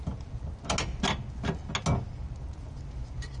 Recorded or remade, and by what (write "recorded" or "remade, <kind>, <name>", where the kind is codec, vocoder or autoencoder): recorded